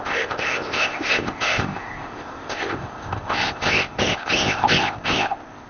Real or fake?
fake